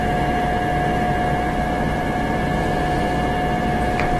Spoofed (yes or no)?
no